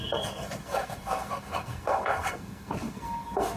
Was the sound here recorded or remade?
remade